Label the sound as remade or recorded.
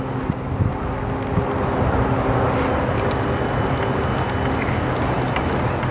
recorded